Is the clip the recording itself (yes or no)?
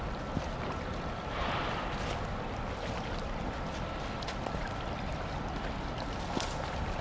yes